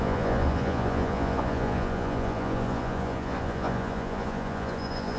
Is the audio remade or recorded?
remade